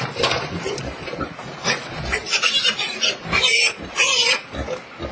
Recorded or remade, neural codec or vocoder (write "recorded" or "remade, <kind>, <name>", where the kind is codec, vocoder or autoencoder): remade, vocoder, BigVGAN v2